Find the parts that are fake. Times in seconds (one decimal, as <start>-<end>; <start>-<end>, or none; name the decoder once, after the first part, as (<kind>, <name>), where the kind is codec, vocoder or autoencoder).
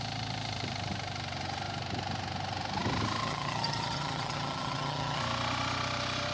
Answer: 3.2-5.2 (vocoder, HiFi-GAN)